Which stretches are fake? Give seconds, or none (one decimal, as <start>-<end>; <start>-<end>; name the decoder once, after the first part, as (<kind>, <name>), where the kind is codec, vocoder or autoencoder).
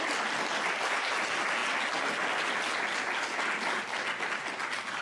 none